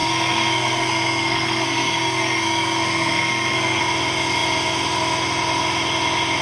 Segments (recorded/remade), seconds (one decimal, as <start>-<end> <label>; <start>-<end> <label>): 0.0-3.8 remade; 3.8-6.4 recorded